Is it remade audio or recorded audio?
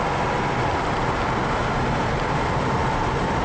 recorded